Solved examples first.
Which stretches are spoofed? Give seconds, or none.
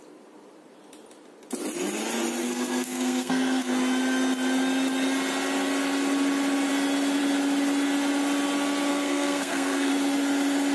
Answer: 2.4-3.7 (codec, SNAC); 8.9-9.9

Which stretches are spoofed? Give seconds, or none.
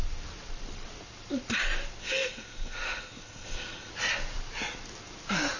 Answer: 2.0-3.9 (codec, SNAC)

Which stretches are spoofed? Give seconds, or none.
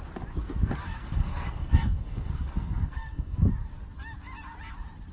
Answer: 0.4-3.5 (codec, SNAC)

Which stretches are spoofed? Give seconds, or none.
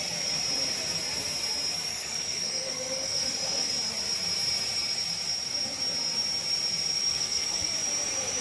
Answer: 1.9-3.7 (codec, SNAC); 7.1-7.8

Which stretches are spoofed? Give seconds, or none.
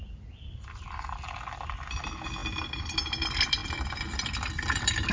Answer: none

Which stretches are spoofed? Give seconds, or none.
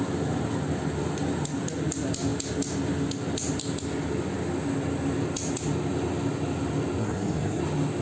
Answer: 7.0-7.6 (codec, SNAC)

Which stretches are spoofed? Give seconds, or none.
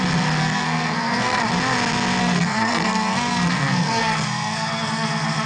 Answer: 0.4-1.4 (codec, SNAC); 2.2-5.5